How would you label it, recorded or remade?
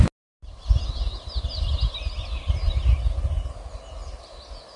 recorded